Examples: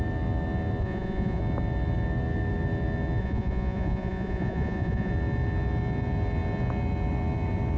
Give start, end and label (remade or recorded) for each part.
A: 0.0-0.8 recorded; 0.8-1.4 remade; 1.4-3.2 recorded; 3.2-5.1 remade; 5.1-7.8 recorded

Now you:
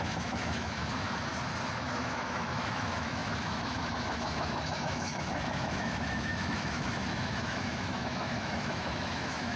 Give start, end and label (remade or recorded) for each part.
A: 0.0-1.3 remade; 1.3-1.8 recorded; 1.8-9.6 remade

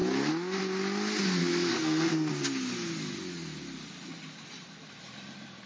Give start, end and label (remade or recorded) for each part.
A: 0.0-1.4 recorded; 1.4-2.3 remade; 2.3-5.7 recorded

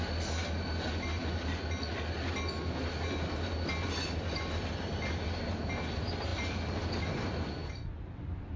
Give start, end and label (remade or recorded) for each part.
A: 0.0-8.6 recorded

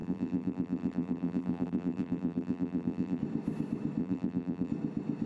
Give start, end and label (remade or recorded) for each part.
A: 0.0-3.2 remade; 3.2-4.0 recorded; 4.0-4.7 remade; 4.7-5.3 recorded